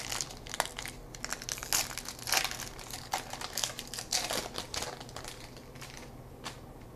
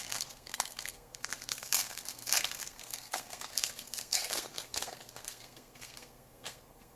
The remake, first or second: second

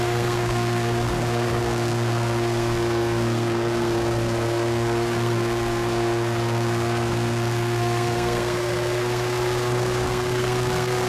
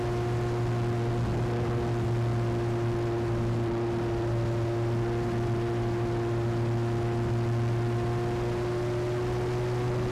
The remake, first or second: first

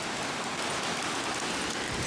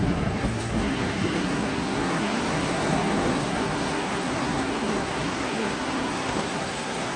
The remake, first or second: second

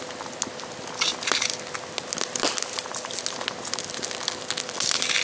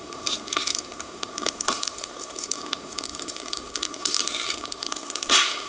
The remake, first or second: second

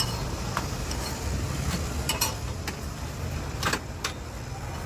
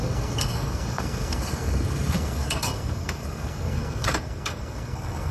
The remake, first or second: second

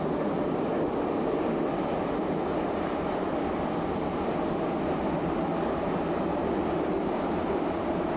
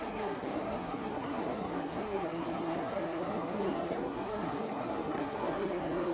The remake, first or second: second